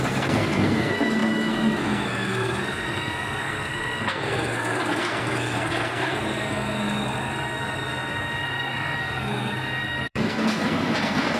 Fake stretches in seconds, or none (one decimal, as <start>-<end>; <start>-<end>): 0.0-11.4